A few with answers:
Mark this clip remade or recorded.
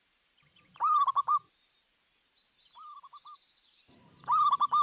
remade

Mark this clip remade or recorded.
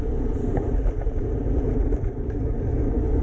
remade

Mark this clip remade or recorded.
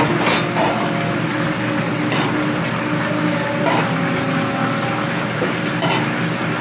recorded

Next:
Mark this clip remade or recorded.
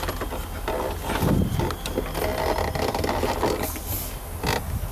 recorded